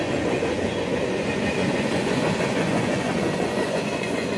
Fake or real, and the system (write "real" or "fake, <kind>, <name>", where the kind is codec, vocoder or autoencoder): fake, vocoder, Vocos